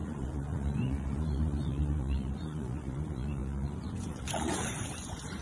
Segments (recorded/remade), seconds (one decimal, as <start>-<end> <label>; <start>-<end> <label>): 0.0-5.4 remade